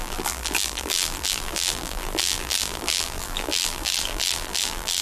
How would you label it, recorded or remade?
remade